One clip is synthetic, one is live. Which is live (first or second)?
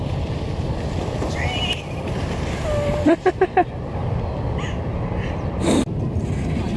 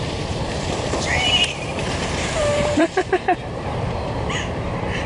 first